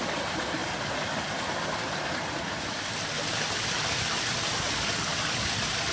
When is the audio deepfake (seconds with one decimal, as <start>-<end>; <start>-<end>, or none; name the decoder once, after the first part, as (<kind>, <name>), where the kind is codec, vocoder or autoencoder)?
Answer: none